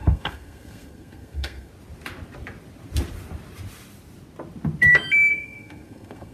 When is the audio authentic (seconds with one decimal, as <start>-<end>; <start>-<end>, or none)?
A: 1.7-5.3